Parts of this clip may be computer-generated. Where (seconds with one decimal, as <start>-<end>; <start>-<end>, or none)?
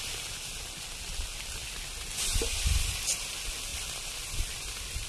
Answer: none